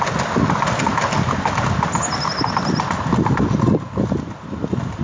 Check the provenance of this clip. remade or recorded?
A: recorded